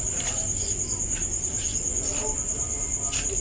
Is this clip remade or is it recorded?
recorded